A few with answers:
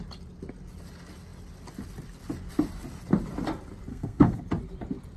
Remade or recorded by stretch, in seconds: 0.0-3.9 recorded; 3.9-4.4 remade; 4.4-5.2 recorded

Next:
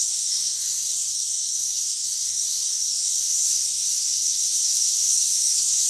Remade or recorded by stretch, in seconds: 0.0-5.9 remade

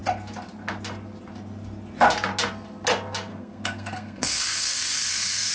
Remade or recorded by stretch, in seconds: 0.0-3.3 recorded; 3.3-5.5 remade

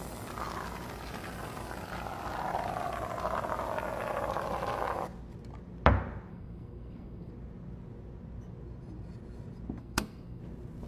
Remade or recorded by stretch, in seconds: 0.0-6.3 recorded; 6.3-7.3 remade; 7.3-9.8 recorded; 9.8-10.4 remade; 10.4-10.9 recorded

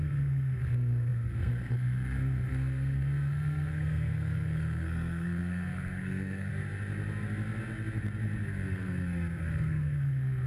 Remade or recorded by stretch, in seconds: 0.0-6.5 remade; 6.5-8.4 recorded; 8.4-10.5 remade